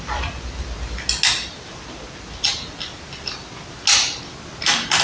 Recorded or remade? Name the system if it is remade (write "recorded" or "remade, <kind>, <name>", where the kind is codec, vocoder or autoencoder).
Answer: recorded